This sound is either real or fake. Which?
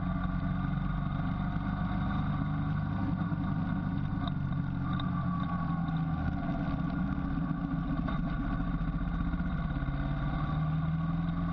real